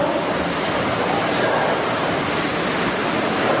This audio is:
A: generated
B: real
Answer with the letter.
B